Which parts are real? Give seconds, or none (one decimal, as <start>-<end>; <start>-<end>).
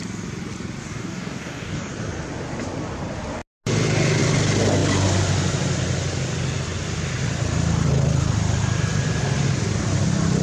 0.0-0.8; 1.9-10.4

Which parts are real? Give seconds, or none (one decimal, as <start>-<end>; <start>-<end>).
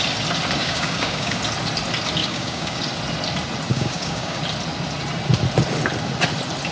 0.0-0.6; 1.4-2.2; 2.8-3.7; 4.4-6.7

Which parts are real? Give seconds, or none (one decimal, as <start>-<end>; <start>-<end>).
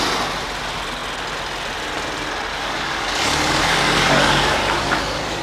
0.0-2.5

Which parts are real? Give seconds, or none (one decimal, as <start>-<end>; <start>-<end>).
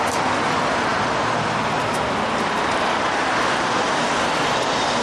0.0-5.0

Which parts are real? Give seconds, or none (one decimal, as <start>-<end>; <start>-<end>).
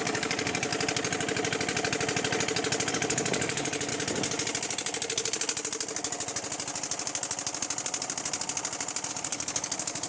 0.7-2.9; 3.9-9.1